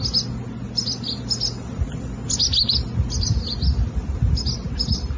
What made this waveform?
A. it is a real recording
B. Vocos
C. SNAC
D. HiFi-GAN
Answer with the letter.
A